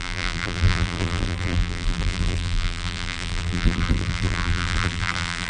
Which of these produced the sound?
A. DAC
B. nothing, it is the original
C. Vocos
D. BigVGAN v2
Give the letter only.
D